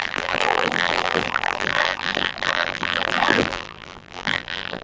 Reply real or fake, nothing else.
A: fake